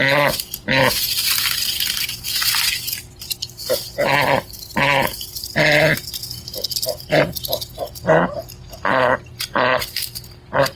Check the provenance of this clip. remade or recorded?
recorded